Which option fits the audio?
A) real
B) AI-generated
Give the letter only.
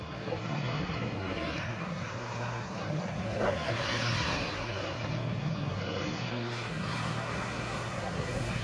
B